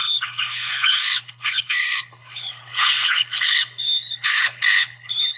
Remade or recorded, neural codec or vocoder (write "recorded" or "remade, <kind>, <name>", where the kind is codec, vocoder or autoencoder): remade, codec, HILCodec